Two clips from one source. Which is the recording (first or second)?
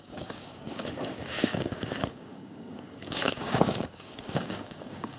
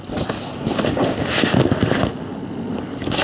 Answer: second